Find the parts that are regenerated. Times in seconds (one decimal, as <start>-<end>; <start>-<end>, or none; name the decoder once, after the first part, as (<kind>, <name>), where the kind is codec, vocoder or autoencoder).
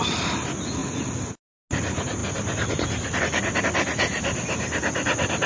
none